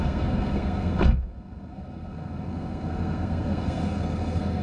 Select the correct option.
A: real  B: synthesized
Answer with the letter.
B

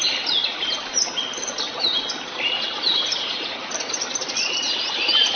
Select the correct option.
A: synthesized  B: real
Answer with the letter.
B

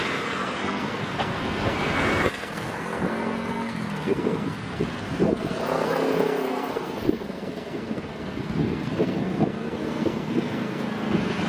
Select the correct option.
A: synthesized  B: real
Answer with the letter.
A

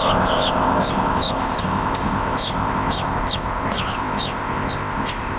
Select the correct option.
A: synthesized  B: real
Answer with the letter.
A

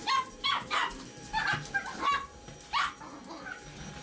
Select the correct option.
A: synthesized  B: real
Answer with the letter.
B